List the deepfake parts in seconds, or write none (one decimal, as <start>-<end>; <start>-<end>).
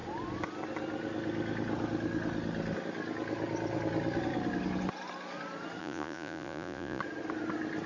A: 5.8-7.0